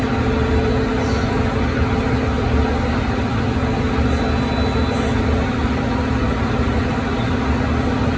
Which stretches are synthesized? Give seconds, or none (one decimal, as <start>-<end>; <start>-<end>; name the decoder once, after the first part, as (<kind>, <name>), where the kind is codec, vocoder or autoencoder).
none